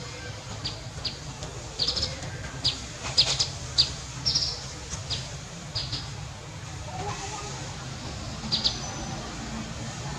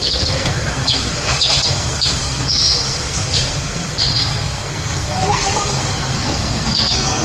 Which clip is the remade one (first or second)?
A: second